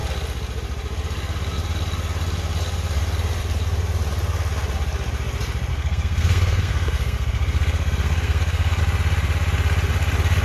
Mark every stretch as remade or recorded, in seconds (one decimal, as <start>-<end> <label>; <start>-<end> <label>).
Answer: 0.0-5.7 recorded; 5.7-8.8 remade; 8.8-10.4 recorded